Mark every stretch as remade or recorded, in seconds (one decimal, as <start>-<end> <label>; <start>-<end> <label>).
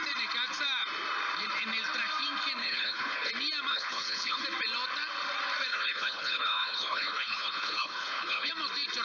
0.0-2.6 recorded; 2.6-3.3 remade; 3.3-3.7 recorded; 3.7-4.4 remade; 4.4-5.7 recorded; 5.7-8.5 remade; 8.5-9.0 recorded